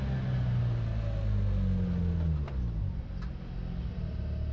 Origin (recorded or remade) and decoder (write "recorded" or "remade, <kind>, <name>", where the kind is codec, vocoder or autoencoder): recorded